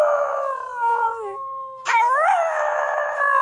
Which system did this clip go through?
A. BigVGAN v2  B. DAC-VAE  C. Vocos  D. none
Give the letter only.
B